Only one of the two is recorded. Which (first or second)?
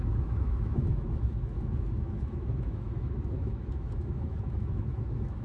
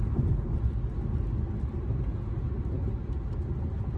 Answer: second